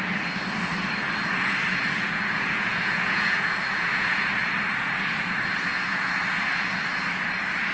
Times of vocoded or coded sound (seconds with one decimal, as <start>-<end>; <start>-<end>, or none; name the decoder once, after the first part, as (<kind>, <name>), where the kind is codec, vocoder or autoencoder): 1.7-4.3 (vocoder, Vocos); 5.7-6.5